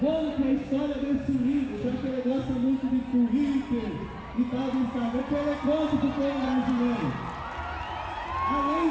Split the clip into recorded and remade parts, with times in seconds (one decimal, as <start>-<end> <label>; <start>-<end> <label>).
0.0-0.4 recorded; 0.4-2.3 remade; 2.3-8.9 recorded